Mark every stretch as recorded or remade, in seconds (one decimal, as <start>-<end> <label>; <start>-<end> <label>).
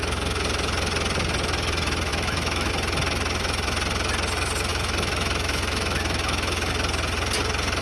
0.0-2.1 recorded; 2.1-2.7 remade; 2.7-4.7 recorded; 4.7-6.7 remade; 6.7-7.8 recorded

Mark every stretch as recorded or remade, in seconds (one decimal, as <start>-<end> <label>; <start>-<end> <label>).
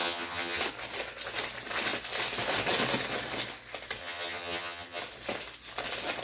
0.0-0.6 remade; 0.6-4.0 recorded; 4.0-5.0 remade; 5.0-6.2 recorded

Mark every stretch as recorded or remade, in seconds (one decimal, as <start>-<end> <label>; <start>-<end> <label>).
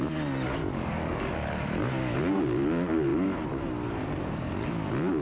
0.0-0.6 recorded; 0.6-1.2 remade; 1.2-5.2 recorded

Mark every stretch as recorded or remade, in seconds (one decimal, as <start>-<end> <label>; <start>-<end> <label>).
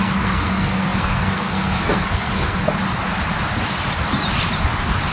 0.0-2.7 remade; 2.7-5.1 recorded